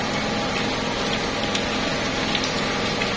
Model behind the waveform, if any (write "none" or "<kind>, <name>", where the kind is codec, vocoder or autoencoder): none